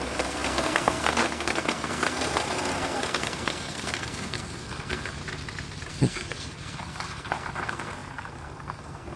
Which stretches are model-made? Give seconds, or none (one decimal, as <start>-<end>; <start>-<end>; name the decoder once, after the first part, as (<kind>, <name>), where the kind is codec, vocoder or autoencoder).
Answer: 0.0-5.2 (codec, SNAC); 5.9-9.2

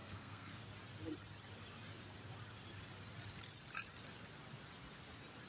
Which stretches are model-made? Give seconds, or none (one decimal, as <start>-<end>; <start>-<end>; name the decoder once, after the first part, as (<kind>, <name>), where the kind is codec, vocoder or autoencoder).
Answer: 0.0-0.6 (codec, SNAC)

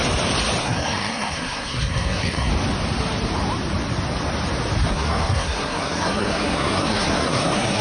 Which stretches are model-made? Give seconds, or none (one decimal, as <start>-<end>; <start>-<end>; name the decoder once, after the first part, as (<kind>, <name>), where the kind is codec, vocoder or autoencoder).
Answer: 0.6-2.5 (codec, SNAC); 4.9-7.8